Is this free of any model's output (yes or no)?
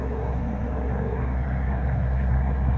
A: no